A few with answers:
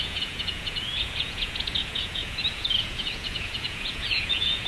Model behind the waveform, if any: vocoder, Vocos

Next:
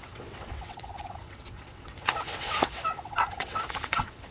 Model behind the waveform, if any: vocoder, WaveNeXt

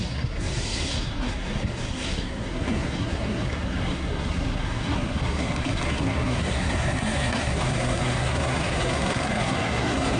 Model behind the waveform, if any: codec, SNAC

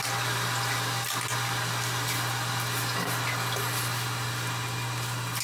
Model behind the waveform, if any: none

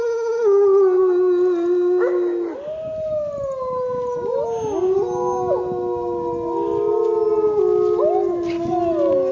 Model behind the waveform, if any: none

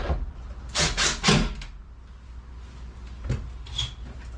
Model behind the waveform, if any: none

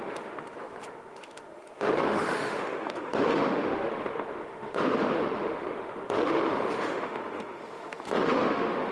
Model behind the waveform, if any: autoencoder, DAC-VAE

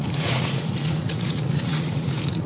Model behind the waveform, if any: vocoder, Vocos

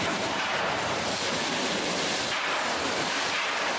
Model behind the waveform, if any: vocoder, BigVGAN v2